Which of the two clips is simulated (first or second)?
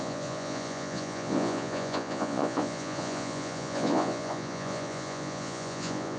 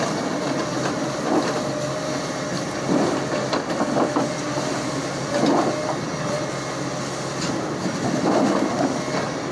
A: first